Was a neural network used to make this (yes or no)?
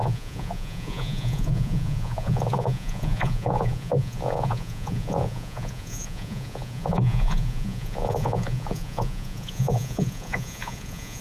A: yes